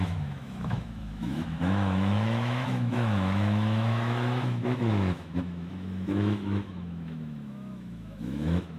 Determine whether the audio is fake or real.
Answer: fake